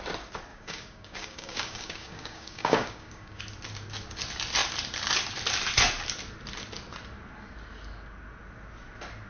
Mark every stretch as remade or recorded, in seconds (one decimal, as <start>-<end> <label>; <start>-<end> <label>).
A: 0.0-0.5 recorded; 0.5-3.4 remade; 3.4-9.3 recorded